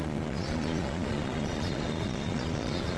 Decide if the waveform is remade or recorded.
remade